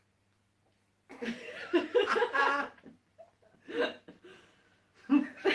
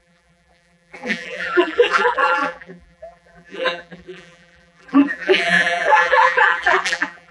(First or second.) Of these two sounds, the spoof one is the second